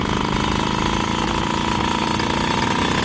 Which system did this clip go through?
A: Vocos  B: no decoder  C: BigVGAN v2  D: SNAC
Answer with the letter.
B